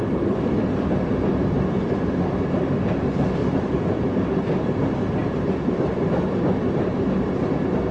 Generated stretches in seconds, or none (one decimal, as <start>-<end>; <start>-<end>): 3.4-4.0; 5.2-6.5